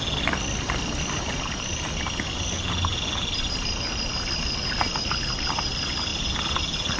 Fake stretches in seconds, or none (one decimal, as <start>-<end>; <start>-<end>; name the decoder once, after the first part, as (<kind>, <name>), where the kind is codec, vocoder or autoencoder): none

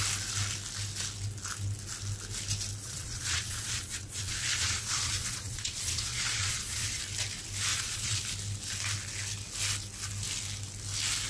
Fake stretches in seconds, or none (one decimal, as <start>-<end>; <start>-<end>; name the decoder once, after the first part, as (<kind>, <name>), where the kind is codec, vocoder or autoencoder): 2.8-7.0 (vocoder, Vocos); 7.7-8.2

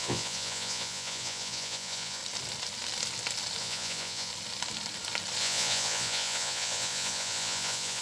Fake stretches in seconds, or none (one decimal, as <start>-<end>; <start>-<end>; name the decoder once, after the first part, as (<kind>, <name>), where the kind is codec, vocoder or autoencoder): 0.0-2.2 (vocoder, Vocos); 3.6-4.3; 5.4-8.0

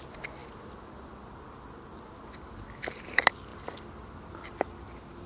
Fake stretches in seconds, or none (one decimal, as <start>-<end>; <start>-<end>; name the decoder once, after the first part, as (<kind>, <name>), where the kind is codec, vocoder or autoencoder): none

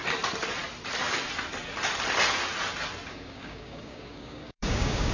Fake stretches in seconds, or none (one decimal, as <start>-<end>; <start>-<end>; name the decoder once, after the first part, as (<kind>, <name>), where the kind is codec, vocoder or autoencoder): 3.1-5.1 (codec, DAC)